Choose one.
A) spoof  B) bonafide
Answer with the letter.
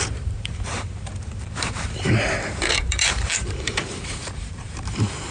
A